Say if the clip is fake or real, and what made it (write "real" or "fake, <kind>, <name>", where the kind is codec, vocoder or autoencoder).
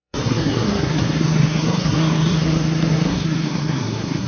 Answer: fake, codec, SNAC